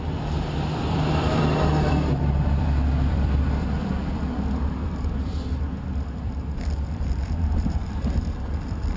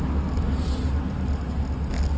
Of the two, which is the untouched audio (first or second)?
second